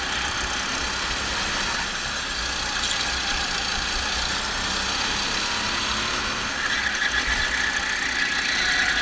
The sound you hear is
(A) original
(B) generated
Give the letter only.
A